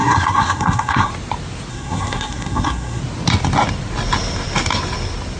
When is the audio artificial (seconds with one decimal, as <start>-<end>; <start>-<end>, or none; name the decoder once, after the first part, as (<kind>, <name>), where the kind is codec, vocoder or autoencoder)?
0.0-1.1 (codec, SNAC); 1.7-3.0

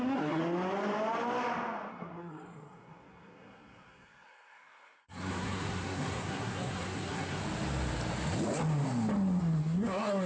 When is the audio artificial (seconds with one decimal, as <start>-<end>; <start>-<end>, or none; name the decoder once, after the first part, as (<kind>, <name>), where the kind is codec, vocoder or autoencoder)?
0.0-0.4 (codec, SNAC); 1.9-7.4; 9.4-10.3

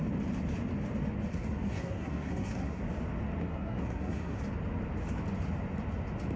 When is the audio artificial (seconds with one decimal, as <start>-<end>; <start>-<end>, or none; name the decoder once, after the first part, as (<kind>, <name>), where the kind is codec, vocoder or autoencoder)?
1.3-2.8 (codec, SNAC); 3.4-4.4

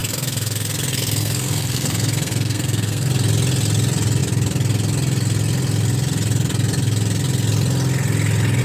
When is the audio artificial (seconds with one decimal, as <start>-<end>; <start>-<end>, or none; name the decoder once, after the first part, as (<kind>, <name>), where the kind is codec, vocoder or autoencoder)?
0.0-3.1 (codec, SNAC)

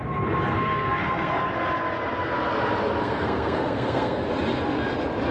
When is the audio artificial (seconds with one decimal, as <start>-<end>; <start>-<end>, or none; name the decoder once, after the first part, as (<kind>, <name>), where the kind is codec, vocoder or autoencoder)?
0.5-1.3 (codec, SNAC); 3.0-4.2

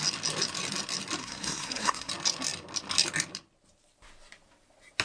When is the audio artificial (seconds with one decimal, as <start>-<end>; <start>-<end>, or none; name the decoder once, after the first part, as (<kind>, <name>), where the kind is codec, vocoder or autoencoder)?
1.2-2.1 (codec, SNAC)